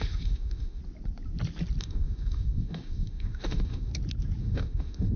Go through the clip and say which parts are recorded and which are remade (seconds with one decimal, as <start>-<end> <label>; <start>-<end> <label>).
0.0-0.8 remade; 0.8-1.8 recorded; 1.8-3.9 remade; 3.9-4.4 recorded; 4.4-5.2 remade